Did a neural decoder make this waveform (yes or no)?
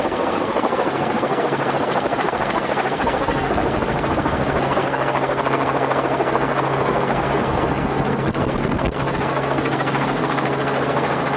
yes